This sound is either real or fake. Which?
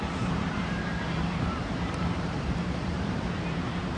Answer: fake